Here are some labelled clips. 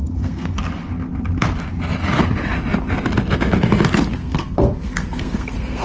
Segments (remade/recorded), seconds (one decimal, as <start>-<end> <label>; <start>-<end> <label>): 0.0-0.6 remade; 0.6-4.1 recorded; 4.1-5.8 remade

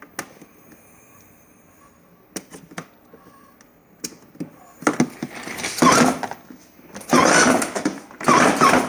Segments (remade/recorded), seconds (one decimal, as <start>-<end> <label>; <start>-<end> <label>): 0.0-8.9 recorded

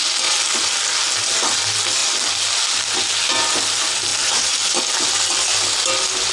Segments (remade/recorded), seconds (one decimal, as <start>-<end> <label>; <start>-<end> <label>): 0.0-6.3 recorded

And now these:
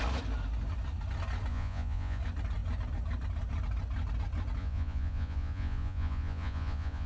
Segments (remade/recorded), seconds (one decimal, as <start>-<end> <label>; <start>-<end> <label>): 0.0-1.5 recorded; 1.5-2.2 remade; 2.2-4.6 recorded; 4.6-7.1 remade

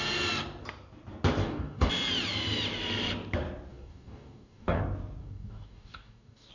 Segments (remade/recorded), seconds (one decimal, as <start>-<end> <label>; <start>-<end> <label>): 0.0-1.4 recorded; 1.4-1.9 remade; 1.9-3.7 recorded; 3.7-4.8 remade; 4.8-5.2 recorded; 5.2-6.5 remade

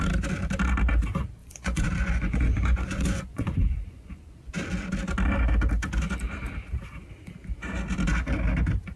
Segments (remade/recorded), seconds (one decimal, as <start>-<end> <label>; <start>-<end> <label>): 0.0-1.4 recorded; 1.4-4.5 remade; 4.5-9.0 recorded